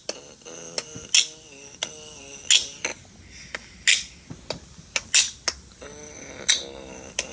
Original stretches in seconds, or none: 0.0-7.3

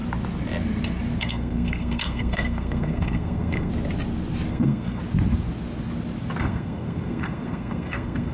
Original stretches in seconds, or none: 0.0-1.2; 3.7-4.5; 5.0-6.4

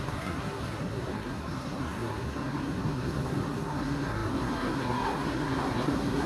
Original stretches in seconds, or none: none

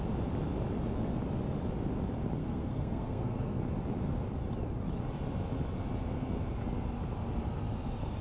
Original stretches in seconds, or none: 0.0-2.4; 3.6-8.2

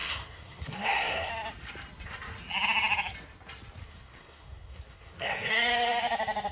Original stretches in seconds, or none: 1.3-3.8; 5.5-6.5

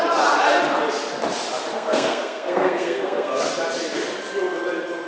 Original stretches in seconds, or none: 0.0-1.7; 3.5-5.1